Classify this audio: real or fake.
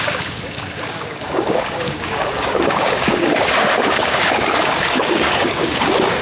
fake